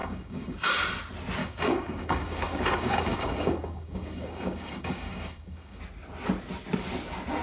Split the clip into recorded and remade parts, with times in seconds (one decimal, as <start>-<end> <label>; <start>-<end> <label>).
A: 0.0-0.8 remade; 0.8-1.4 recorded; 1.4-5.8 remade; 5.8-7.4 recorded